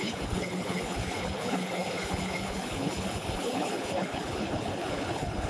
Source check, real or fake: fake